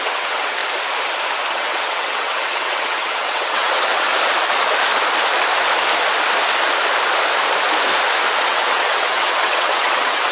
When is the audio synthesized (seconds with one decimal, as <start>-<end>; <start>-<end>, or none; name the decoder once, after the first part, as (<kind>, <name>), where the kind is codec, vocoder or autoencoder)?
0.0-0.6 (vocoder, WaveNeXt); 1.5-4.1; 8.4-10.3